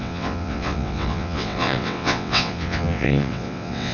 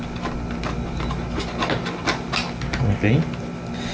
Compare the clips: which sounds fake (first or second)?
first